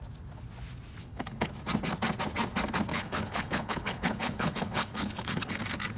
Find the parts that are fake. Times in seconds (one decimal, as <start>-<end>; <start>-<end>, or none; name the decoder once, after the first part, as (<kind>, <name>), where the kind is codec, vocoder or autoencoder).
1.0-1.5 (codec, HILCodec); 2.9-5.6